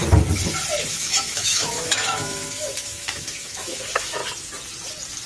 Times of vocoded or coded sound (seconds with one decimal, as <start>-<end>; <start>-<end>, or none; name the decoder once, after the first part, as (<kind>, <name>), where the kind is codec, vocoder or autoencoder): 0.9-4.2 (autoencoder, DAC-VAE)